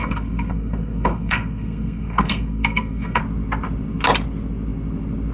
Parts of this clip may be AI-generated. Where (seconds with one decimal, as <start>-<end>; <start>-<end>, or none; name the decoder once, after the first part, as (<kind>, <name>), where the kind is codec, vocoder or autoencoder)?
0.0-3.2 (codec, SNAC)